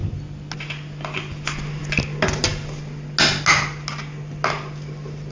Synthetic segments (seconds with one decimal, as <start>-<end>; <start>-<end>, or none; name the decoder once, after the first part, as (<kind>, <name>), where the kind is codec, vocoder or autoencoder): none